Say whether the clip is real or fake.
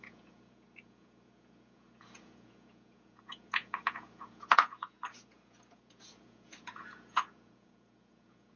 fake